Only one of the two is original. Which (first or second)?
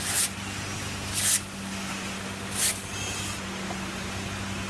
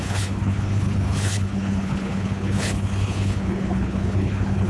first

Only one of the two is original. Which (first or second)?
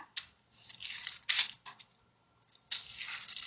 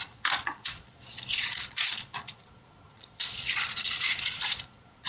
first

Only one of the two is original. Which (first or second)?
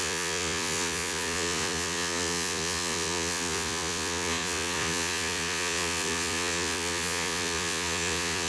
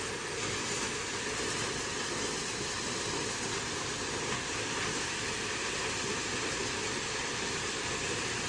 second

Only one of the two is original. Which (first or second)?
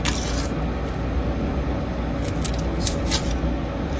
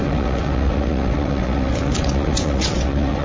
first